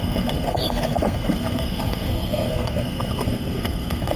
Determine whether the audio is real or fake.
fake